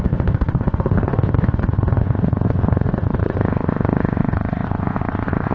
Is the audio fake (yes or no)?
yes